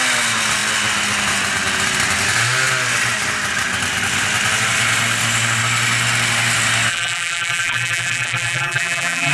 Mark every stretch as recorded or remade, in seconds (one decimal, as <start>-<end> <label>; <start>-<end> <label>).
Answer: 0.0-6.9 recorded; 6.9-9.3 remade

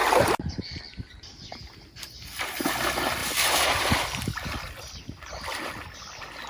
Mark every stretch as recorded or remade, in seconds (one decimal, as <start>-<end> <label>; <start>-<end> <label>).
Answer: 0.0-0.5 remade; 0.5-3.2 recorded; 3.2-4.3 remade; 4.3-6.5 recorded

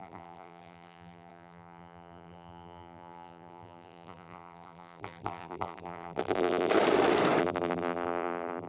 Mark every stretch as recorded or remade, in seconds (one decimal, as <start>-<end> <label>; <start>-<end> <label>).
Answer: 0.0-6.7 remade; 6.7-7.4 recorded; 7.4-8.7 remade